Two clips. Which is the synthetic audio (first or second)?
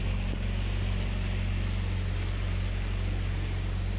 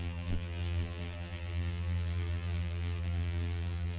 second